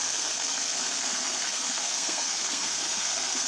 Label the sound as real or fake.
fake